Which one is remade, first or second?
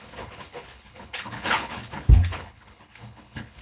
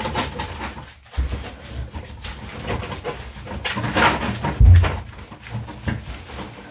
first